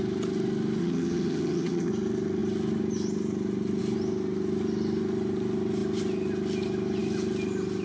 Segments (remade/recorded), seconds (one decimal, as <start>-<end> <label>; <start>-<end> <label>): 0.0-0.8 recorded; 0.8-1.9 remade; 1.9-7.8 recorded